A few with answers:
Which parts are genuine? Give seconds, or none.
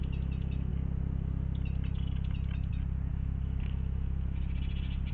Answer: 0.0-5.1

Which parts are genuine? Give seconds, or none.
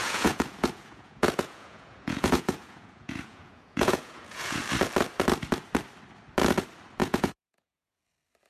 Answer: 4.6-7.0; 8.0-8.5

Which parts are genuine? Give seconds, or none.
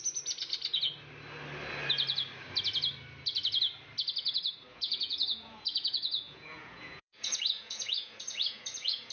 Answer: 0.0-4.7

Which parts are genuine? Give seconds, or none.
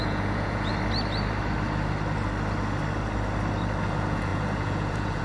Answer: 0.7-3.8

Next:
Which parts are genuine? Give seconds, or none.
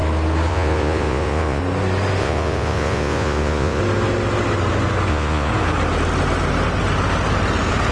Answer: 0.0-0.5; 1.6-2.2; 3.8-5.1; 5.5-7.9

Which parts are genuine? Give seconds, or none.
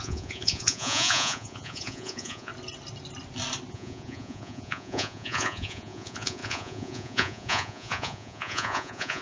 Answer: 2.5-3.7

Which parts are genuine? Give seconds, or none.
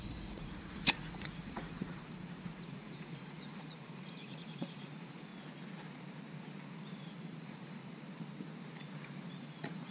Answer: 5.3-7.2; 7.8-9.3